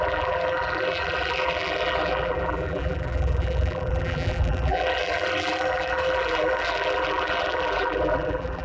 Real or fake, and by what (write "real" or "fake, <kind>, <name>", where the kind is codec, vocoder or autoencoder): fake, vocoder, BigVGAN v2